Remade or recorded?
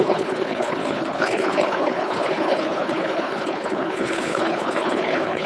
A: remade